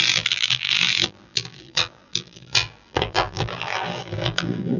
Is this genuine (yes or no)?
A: no